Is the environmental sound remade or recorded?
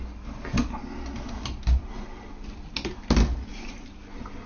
recorded